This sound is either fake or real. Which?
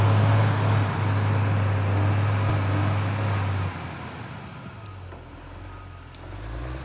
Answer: real